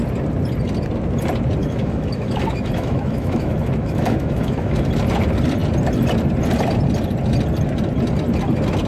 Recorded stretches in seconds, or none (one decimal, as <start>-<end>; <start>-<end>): 0.0-1.6; 4.9-8.9